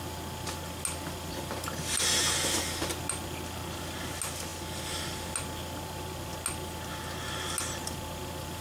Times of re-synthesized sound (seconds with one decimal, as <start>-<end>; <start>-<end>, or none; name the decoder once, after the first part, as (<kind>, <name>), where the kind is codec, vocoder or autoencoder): none